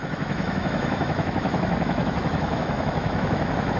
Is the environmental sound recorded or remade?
remade